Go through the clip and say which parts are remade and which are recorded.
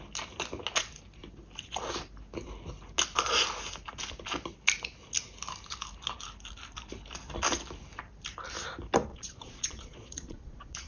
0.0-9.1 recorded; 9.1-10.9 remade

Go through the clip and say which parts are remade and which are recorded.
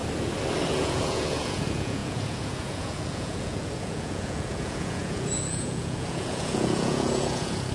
0.0-0.7 recorded; 0.7-7.7 remade